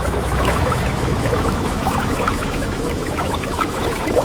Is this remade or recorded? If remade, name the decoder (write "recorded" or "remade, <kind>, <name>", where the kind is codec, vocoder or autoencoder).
remade, autoencoder, DAC-VAE